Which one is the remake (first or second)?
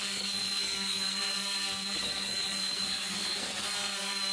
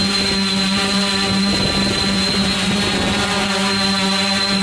first